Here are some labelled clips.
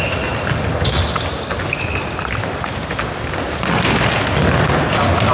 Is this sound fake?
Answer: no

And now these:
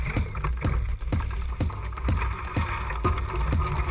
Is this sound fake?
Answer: no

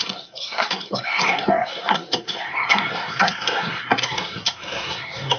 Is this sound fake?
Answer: yes